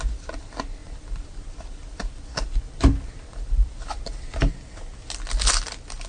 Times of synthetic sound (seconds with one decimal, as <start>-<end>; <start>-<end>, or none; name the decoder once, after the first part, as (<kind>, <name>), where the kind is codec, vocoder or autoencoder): 0.8-4.5 (vocoder, BigVGAN v2)